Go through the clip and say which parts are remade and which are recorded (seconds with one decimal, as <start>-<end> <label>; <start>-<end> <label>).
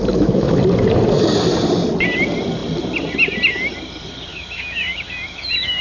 0.0-0.6 remade; 0.6-4.3 recorded; 4.3-5.8 remade